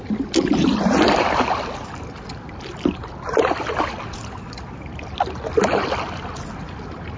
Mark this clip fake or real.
real